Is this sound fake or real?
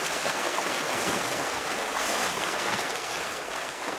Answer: fake